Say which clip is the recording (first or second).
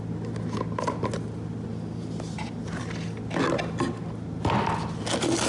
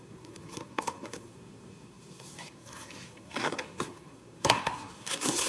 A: first